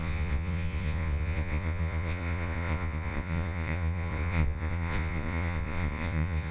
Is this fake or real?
fake